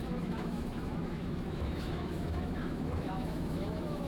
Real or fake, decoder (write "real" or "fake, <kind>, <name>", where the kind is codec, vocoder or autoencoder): fake, autoencoder, DAC-VAE